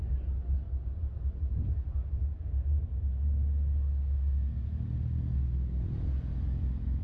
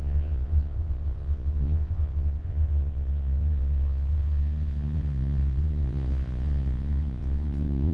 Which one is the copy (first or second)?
second